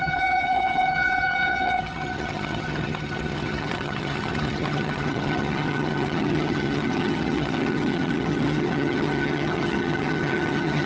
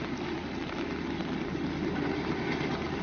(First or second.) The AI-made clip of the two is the first